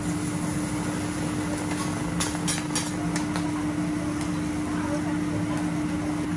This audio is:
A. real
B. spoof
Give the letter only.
A